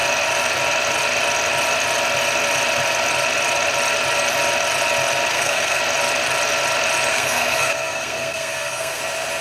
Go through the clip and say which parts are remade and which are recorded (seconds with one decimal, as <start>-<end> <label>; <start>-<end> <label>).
0.0-5.3 recorded; 5.3-5.8 remade; 5.8-7.1 recorded; 7.1-9.0 remade; 9.0-9.4 recorded